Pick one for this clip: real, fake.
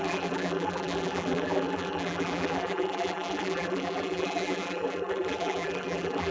fake